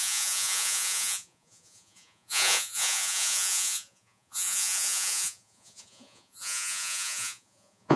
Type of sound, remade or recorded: remade